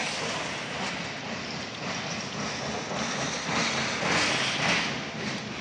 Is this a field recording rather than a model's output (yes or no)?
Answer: yes